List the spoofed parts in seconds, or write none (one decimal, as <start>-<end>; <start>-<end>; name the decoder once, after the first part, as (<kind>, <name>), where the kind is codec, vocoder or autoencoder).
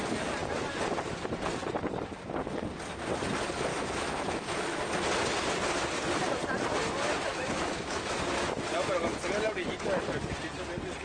3.7-4.8 (autoencoder, DAC-VAE); 7.3-8.2